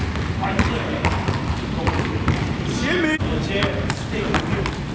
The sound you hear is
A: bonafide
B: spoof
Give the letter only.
A